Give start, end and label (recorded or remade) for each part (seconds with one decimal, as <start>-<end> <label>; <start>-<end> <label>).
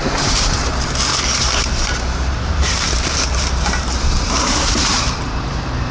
0.0-1.1 remade; 1.1-1.6 recorded; 1.6-5.9 remade